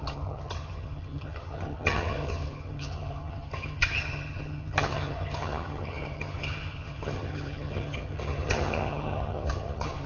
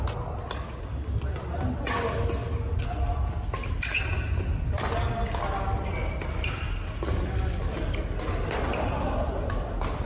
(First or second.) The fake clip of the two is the first